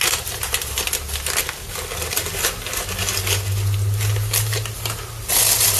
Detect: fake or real real